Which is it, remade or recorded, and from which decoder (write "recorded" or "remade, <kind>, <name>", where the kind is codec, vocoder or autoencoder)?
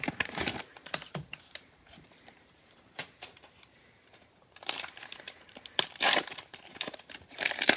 remade, vocoder, BigVGAN v2